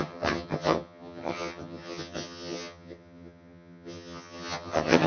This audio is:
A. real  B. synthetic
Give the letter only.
B